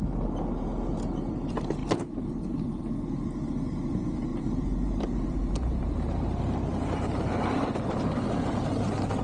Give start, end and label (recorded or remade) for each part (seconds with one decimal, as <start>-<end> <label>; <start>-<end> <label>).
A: 0.0-1.8 recorded; 1.8-2.8 remade; 2.8-4.3 recorded; 4.3-6.4 remade; 6.4-9.2 recorded